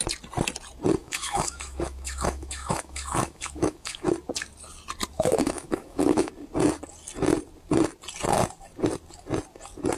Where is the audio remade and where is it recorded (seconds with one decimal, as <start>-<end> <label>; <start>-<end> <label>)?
0.0-1.0 recorded; 1.0-4.1 remade; 4.1-5.1 recorded; 5.1-6.3 remade; 6.3-10.0 recorded